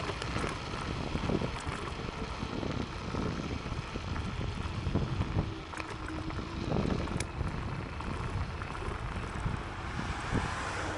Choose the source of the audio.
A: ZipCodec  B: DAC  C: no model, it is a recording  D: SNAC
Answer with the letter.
C